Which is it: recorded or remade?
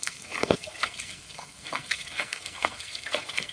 remade